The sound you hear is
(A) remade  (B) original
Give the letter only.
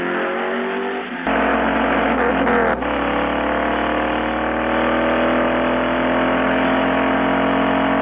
B